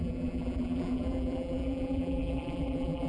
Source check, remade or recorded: remade